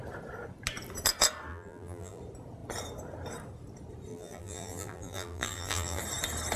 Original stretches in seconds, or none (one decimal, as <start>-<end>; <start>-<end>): 0.0-1.5; 2.2-4.1; 6.0-6.6